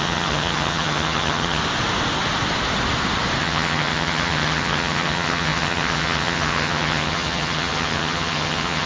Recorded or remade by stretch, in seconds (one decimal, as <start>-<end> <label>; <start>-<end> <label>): 0.0-1.6 remade; 1.6-3.4 recorded; 3.4-8.9 remade